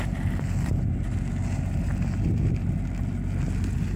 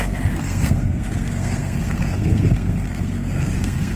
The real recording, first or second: first